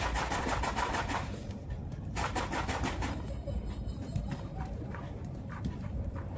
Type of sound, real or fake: fake